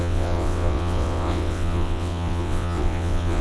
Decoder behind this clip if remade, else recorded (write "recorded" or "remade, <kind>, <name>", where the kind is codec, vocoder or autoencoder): remade, vocoder, WaveNeXt